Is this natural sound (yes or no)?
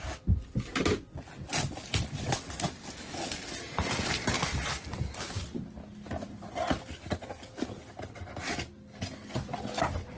yes